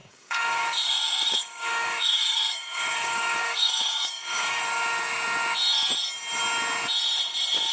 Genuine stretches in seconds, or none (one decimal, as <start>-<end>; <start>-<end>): 4.6-7.7